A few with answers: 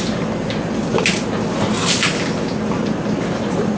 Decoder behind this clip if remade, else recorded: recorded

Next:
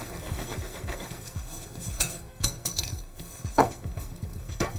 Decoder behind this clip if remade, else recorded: remade, codec, SNAC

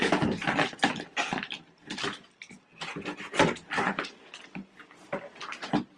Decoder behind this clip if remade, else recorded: recorded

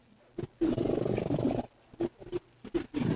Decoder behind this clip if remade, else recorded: recorded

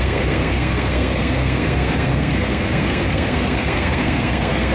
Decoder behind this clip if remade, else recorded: remade, codec, SNAC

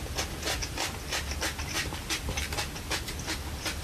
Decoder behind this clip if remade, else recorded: recorded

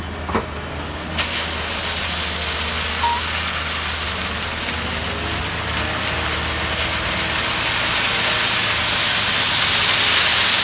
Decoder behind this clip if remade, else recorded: recorded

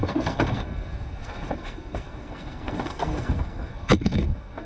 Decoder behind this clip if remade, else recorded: remade, codec, SNAC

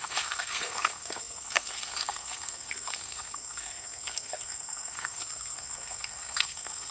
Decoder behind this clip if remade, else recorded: remade, codec, SNAC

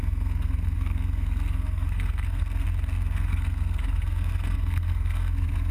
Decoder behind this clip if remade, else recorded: remade, codec, SNAC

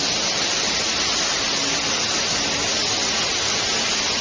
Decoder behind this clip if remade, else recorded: recorded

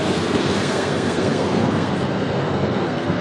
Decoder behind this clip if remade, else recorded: remade, codec, SNAC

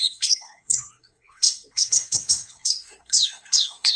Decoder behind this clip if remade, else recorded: remade, codec, SNAC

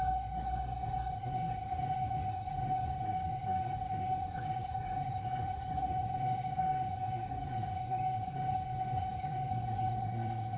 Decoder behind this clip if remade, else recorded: remade, codec, SNAC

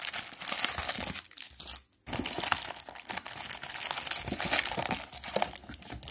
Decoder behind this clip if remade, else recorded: recorded